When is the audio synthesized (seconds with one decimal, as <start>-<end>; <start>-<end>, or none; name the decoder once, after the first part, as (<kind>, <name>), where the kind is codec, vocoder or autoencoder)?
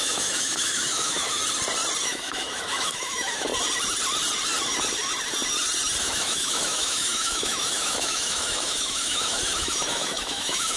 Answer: 0.0-1.4 (autoencoder, DAC-VAE); 2.0-3.5; 6.0-10.8